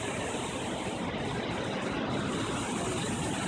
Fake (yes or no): no